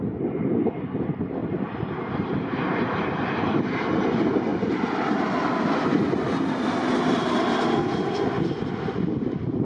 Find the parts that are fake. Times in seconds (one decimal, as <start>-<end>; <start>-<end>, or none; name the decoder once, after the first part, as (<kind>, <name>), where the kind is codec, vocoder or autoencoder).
none